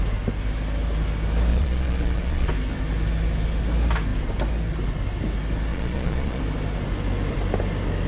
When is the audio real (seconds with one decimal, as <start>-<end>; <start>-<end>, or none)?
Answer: 0.0-1.5; 2.5-5.7; 6.4-8.1